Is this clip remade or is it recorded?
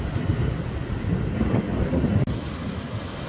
recorded